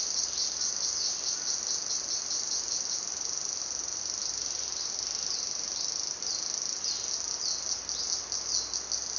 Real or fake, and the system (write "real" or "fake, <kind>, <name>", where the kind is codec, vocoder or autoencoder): real